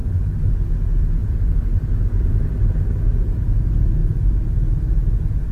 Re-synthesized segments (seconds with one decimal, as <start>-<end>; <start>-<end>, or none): 0.5-4.0; 5.1-5.5